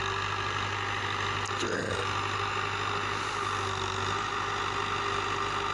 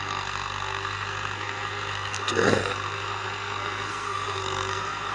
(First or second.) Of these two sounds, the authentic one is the first